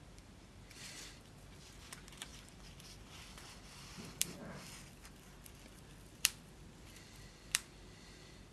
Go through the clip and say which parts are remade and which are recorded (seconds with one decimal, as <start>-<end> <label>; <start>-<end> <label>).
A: 0.0-4.4 remade; 4.4-4.9 recorded; 4.9-8.5 remade